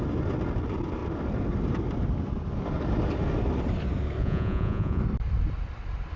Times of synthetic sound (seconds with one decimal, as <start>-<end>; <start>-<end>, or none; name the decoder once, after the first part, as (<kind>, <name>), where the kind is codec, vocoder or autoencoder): 4.2-5.0 (vocoder, Vocos)